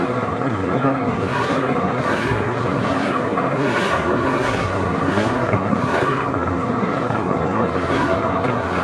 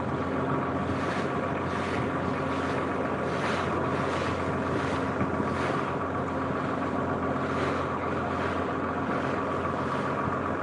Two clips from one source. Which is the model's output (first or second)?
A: first